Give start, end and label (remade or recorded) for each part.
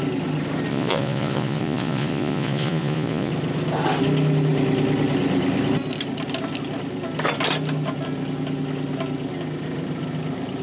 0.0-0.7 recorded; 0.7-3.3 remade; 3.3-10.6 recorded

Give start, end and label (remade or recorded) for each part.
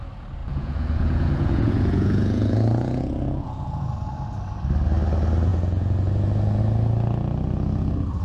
0.0-0.4 recorded; 0.4-3.9 remade; 3.9-5.5 recorded; 5.5-6.6 remade; 6.6-8.2 recorded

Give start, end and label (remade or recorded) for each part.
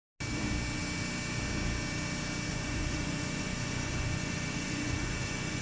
0.0-2.5 recorded; 2.5-5.6 remade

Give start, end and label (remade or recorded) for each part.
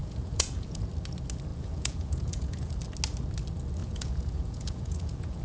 0.0-0.9 remade; 0.9-1.5 recorded; 1.5-2.7 remade; 2.7-3.8 recorded; 3.8-5.4 remade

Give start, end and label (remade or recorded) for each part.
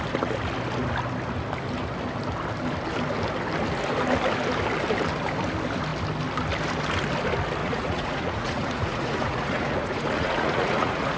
0.0-7.6 recorded; 7.6-11.2 remade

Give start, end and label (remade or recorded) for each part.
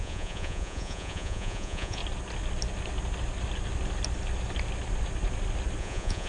0.0-2.0 remade; 2.0-5.8 recorded; 5.8-6.3 remade